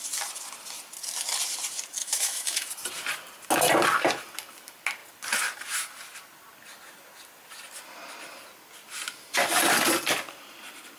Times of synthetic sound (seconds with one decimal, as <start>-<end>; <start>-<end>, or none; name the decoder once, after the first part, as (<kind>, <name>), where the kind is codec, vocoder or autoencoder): 2.0-2.7 (autoencoder, DAC-VAE)